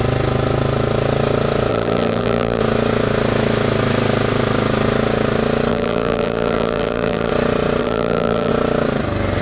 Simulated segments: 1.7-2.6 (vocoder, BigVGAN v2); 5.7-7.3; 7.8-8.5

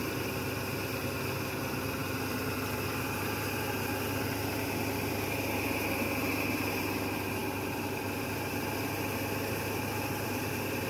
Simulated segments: none

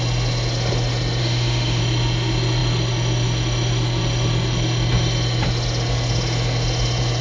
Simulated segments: 1.2-1.8 (autoencoder, DAC-VAE)

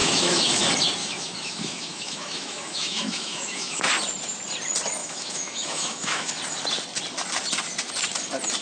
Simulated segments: 0.0-0.6 (autoencoder, DAC-VAE); 1.0-3.9; 5.0-6.3

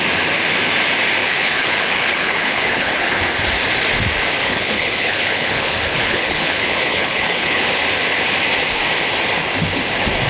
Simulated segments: 1.2-3.2 (codec, HILCodec); 4.4-7.6